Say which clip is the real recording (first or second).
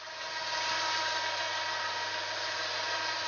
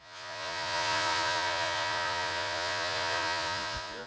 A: first